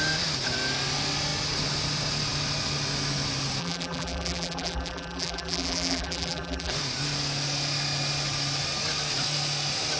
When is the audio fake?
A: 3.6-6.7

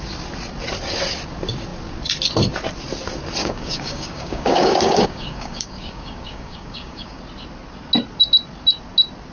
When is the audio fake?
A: 3.4-7.2

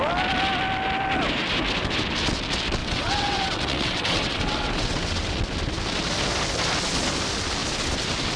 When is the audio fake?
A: 2.8-5.4

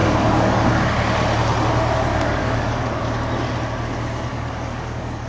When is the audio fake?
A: 0.0-0.7; 2.1-3.0; 4.3-5.3

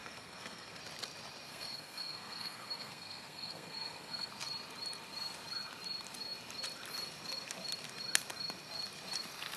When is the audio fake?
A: 0.0-0.8; 1.5-4.3

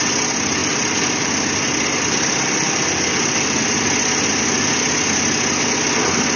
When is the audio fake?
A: none